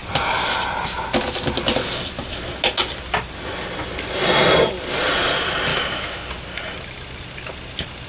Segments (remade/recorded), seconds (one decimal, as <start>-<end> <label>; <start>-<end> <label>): 0.0-5.7 recorded; 5.7-6.3 remade; 6.3-8.1 recorded